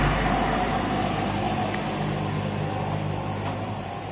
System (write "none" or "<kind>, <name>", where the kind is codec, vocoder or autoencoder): none